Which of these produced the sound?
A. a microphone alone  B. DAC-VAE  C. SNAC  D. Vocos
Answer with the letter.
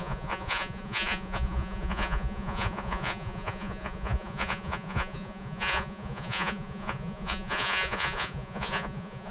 D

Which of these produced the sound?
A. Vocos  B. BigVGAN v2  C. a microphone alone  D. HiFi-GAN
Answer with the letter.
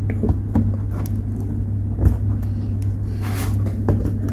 C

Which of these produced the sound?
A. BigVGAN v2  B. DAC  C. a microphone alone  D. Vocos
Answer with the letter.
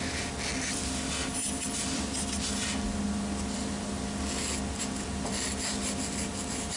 C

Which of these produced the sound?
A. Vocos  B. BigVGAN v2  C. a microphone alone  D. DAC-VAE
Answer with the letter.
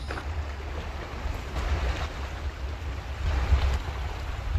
C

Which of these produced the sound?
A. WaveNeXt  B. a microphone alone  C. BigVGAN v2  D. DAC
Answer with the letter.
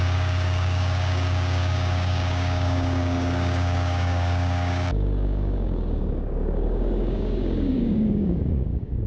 D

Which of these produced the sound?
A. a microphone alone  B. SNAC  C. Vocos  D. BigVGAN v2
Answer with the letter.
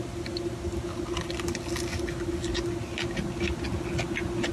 A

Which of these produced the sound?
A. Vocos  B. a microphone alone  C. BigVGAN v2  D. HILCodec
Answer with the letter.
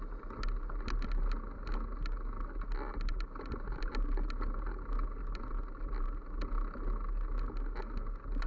B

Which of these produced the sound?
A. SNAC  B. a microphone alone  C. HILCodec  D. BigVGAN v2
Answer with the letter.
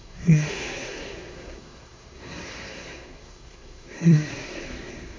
A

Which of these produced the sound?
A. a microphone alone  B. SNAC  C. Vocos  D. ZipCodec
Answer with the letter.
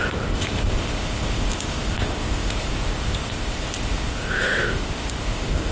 D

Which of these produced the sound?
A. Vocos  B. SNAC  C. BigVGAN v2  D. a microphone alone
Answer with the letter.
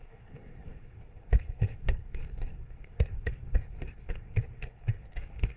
B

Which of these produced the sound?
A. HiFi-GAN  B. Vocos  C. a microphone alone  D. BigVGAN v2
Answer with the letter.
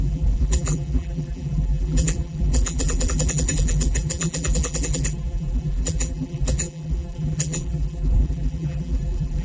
D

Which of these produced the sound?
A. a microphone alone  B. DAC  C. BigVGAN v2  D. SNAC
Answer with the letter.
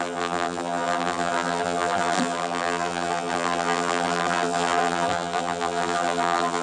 C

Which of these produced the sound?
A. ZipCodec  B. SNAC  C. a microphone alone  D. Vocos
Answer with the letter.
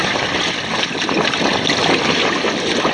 C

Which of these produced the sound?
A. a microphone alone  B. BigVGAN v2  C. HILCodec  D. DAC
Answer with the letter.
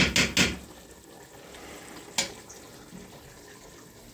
A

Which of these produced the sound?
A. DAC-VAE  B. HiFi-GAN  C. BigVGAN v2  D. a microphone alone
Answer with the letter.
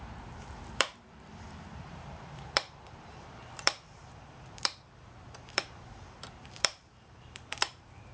C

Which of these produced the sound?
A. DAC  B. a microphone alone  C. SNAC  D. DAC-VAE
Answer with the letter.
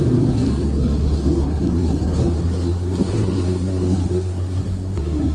C